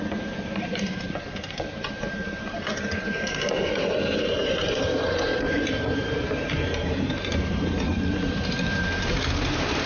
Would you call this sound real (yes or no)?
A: no